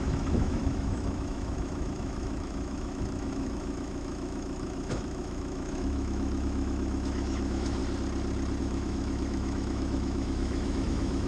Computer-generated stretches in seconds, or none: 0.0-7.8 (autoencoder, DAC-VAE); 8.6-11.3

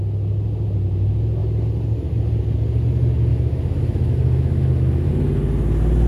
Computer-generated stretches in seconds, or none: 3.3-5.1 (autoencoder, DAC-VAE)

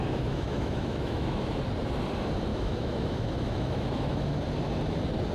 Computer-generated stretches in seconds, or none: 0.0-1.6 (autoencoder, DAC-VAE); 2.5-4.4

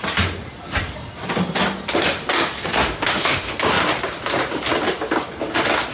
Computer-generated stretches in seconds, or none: 2.8-3.5 (autoencoder, DAC-VAE)

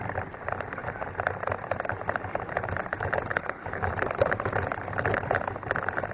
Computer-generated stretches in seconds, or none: 3.3-3.9 (codec, HILCodec)